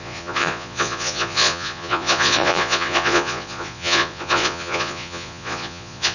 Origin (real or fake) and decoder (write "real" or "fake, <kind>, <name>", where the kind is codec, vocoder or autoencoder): fake, vocoder, Vocos